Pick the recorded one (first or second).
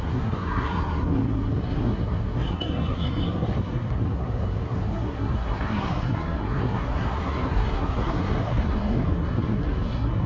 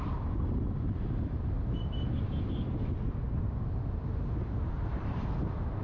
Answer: second